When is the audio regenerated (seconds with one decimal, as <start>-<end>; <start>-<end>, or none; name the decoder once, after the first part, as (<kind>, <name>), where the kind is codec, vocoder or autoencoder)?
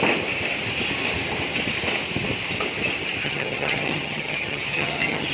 3.2-5.3 (vocoder, HiFi-GAN)